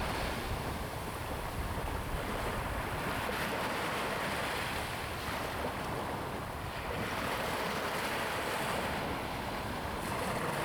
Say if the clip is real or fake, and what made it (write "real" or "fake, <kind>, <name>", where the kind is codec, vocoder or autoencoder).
real